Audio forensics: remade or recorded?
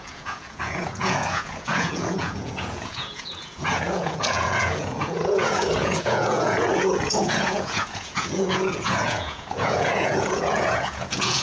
remade